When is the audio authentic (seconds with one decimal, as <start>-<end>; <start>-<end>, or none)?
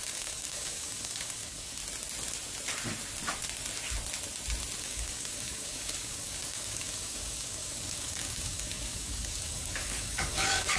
1.8-4.8